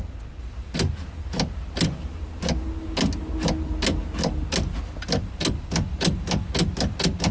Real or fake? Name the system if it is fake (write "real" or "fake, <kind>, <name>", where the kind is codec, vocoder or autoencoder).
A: real